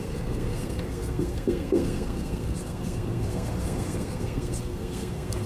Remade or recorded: remade